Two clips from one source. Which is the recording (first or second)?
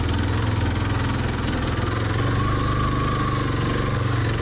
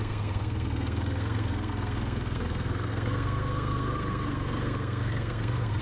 first